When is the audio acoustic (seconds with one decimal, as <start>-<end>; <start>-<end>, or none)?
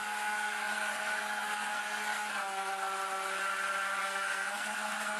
2.7-4.0